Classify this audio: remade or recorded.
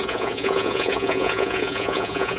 remade